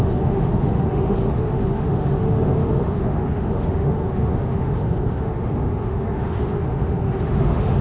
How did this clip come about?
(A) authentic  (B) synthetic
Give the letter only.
B